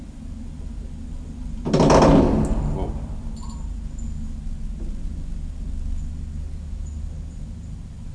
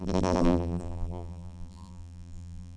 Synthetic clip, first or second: second